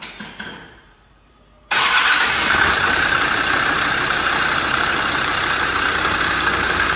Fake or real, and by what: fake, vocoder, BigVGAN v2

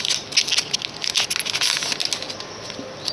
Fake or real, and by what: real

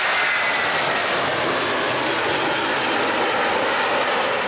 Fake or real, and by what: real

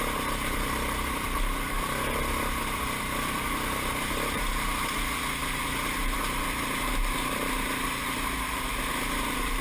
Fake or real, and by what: fake, vocoder, BigVGAN v2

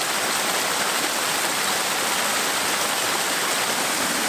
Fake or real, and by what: fake, vocoder, BigVGAN v2